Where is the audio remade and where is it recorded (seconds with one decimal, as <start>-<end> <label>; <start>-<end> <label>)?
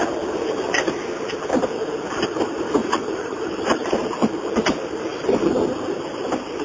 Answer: 0.0-2.8 recorded; 2.8-3.4 remade; 3.4-6.6 recorded